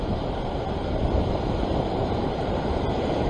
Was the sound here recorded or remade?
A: remade